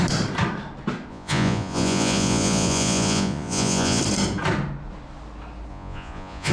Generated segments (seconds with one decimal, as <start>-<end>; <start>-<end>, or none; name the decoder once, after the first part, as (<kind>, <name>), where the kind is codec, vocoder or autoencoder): 1.1-4.0 (vocoder, Vocos); 5.7-6.5